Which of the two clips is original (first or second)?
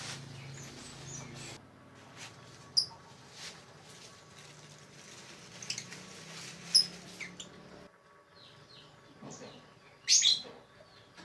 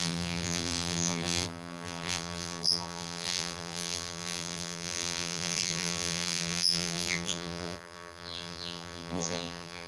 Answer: first